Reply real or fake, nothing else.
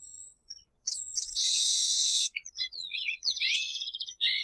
fake